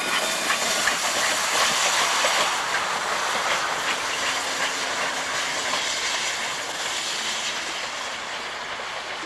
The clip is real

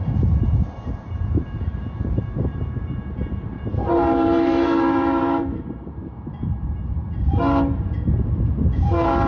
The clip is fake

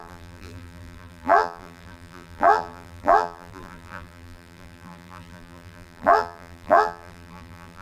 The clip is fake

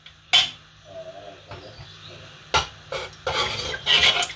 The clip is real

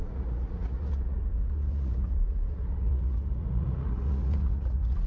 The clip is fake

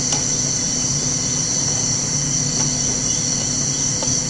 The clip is real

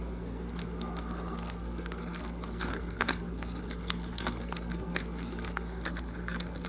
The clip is fake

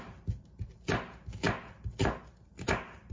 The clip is real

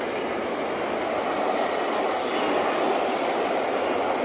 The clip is real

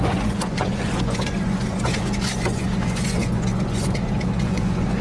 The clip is fake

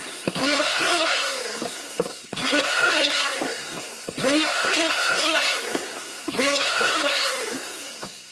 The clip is fake